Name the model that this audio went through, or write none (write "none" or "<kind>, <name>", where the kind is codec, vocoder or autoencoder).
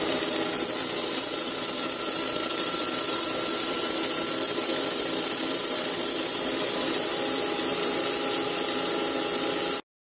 none